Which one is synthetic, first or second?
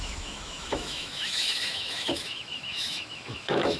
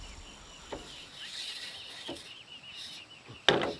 first